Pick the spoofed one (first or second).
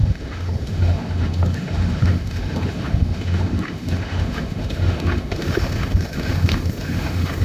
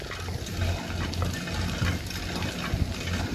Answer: first